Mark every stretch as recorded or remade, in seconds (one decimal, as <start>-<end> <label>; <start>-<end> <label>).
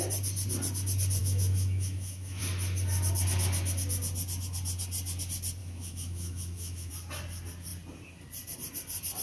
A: 0.0-1.2 recorded; 1.2-2.4 remade; 2.4-5.6 recorded; 5.6-6.9 remade; 6.9-9.2 recorded